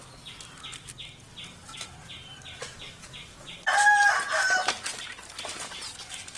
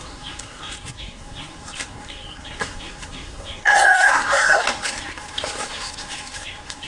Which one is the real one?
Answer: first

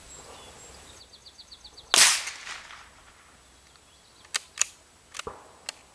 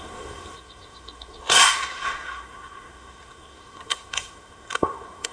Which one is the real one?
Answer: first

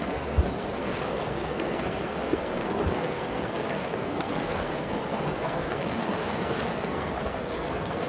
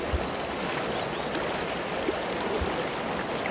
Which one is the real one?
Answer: second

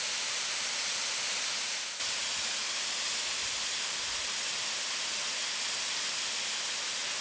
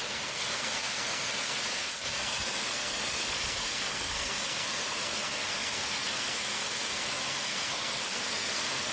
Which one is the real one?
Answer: first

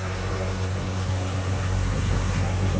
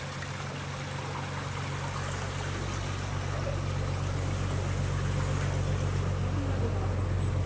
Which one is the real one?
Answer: second